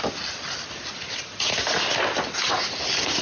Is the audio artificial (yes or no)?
no